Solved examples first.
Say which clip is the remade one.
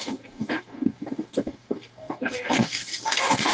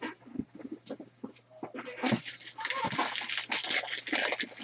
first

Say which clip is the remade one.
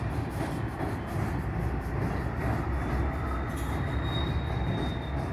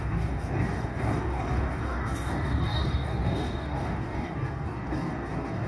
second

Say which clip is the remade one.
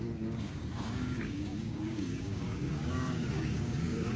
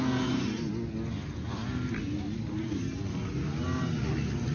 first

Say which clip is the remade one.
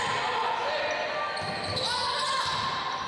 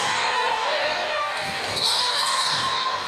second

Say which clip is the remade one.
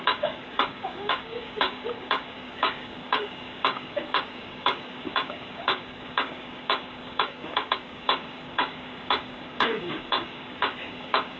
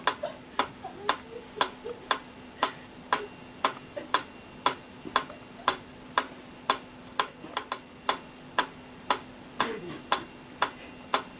first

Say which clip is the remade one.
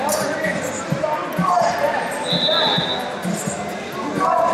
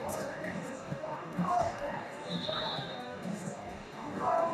second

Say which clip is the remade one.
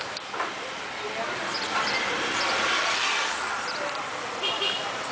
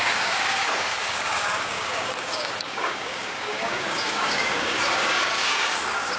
second